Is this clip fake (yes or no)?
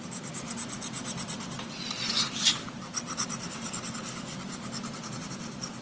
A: no